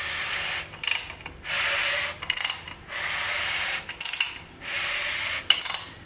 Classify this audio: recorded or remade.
recorded